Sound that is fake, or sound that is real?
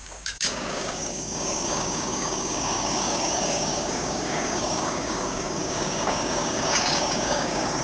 fake